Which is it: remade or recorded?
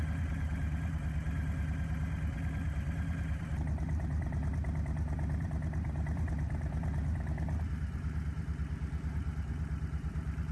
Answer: remade